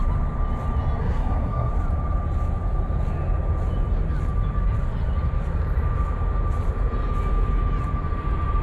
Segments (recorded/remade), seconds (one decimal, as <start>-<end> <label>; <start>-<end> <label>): 0.0-1.0 recorded; 1.0-1.7 remade; 1.7-8.6 recorded